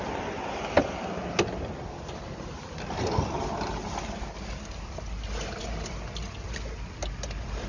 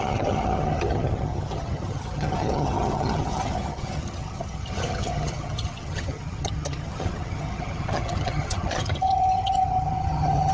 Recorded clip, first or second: first